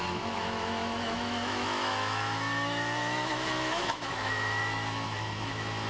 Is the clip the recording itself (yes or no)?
no